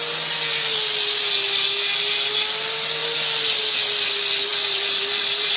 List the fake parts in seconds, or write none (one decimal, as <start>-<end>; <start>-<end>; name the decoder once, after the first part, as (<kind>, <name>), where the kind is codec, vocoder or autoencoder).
4.5-5.6 (vocoder, BigVGAN v2)